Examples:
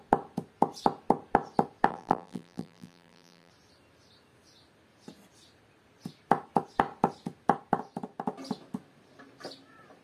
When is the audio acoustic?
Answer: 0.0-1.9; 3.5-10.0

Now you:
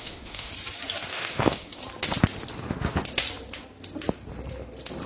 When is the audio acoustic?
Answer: 0.5-1.1; 1.8-5.1

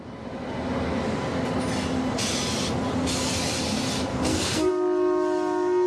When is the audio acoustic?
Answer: 0.0-4.1; 4.7-5.9

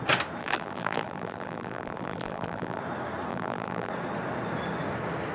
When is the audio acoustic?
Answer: 0.0-0.4; 2.8-3.3; 3.9-5.3

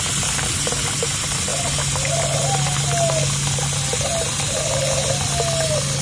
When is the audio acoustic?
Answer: 0.0-6.0

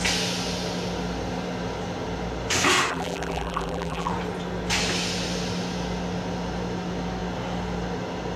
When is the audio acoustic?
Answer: 0.0-2.9; 4.1-8.4

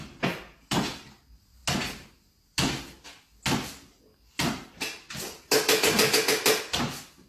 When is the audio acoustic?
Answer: 0.0-7.3